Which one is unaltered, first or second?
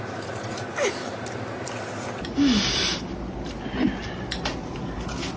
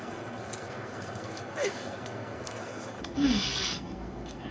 first